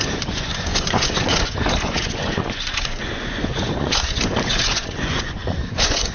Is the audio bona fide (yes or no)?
no